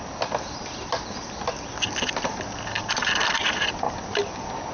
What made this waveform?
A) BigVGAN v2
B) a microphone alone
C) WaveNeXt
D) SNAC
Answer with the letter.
B